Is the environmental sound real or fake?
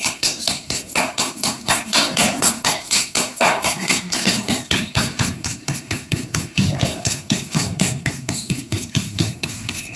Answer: fake